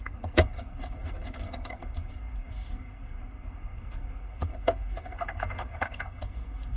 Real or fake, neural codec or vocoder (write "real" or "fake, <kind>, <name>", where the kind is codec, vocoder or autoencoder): fake, codec, SNAC